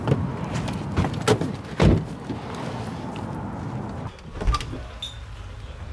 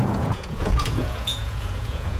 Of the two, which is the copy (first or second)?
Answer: second